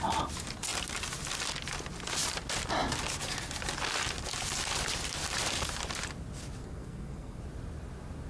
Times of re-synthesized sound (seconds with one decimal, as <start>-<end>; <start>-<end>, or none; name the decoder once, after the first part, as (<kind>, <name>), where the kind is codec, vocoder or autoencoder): 6.6-7.4 (codec, SNAC)